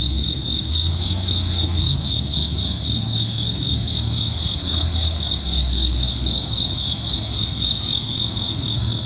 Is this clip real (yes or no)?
no